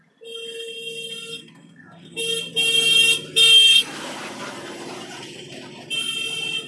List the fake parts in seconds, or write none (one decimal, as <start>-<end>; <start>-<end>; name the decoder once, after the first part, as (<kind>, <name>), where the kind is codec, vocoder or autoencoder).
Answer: 1.3-2.2 (codec, SNAC); 3.4-3.9